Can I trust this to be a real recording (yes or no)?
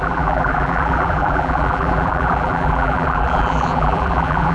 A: no